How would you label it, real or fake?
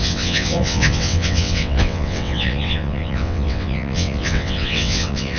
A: fake